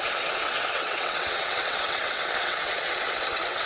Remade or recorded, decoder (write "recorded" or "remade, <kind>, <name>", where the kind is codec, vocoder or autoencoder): remade, vocoder, WaveNeXt